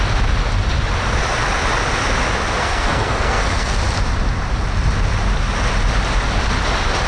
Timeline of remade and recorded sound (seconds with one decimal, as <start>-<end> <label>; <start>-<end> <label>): 0.0-2.6 recorded; 2.6-3.8 remade; 3.8-7.1 recorded